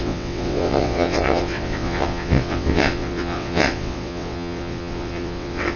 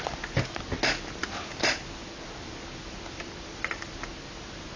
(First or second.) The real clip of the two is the second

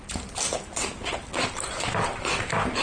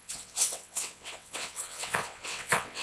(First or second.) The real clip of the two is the first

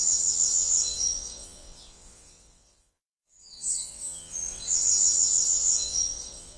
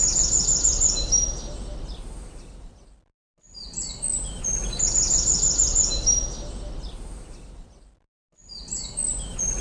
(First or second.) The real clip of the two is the second